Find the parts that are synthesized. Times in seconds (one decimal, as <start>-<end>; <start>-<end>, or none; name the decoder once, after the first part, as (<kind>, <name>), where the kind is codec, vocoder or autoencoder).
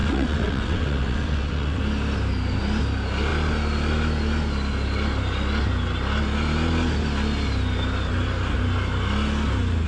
0.0-1.8 (vocoder, WaveNeXt)